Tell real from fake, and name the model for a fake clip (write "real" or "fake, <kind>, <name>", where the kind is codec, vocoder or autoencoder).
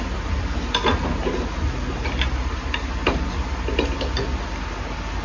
real